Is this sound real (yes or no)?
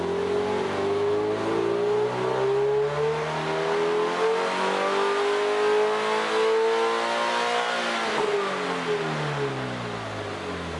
yes